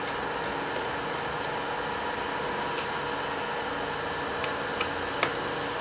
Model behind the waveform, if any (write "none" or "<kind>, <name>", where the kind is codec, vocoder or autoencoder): none